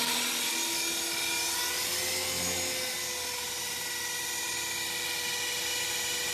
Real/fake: real